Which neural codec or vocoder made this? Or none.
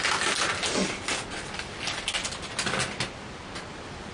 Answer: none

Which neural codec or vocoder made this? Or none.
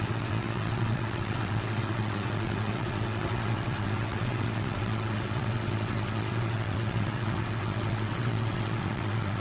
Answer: vocoder, WaveNeXt